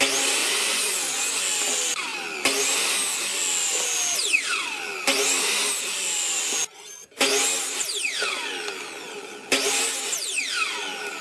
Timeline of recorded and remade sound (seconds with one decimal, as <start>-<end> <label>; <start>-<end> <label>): 0.0-0.4 recorded; 0.4-1.4 remade; 1.4-11.2 recorded